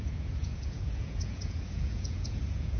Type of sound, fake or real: fake